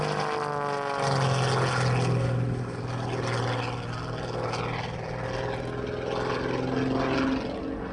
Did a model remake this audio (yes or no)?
no